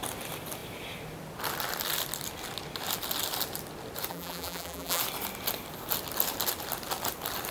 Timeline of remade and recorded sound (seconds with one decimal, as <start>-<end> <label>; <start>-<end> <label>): 0.0-4.1 recorded; 4.1-5.0 remade; 5.0-7.5 recorded